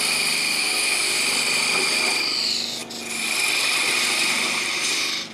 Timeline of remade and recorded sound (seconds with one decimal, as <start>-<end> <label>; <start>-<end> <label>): 0.0-0.5 recorded; 0.5-1.2 remade; 1.2-5.3 recorded